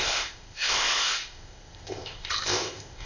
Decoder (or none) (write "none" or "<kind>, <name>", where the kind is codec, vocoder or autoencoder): codec, ZipCodec